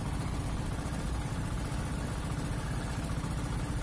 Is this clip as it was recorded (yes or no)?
yes